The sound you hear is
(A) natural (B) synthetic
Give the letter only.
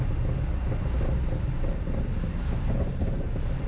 A